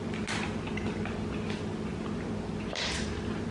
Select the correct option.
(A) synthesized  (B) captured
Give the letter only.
B